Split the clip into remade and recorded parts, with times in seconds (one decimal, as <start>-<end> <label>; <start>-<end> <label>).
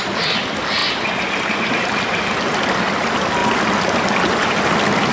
0.0-5.1 recorded